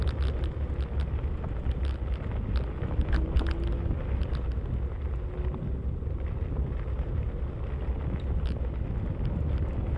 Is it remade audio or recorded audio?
recorded